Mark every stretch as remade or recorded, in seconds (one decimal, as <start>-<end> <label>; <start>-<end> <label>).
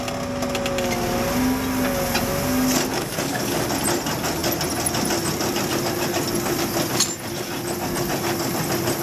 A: 0.0-2.9 recorded; 2.9-3.7 remade; 3.7-9.0 recorded